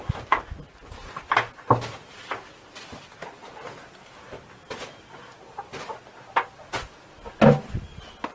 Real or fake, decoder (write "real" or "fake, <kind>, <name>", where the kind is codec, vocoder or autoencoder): real